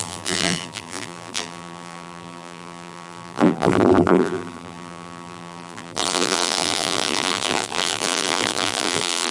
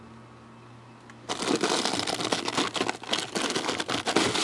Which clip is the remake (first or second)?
first